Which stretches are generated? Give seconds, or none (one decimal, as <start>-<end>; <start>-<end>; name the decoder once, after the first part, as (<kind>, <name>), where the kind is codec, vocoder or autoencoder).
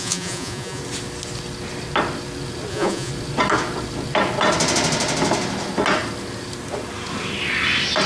0.0-0.8 (vocoder, Vocos); 2.7-3.1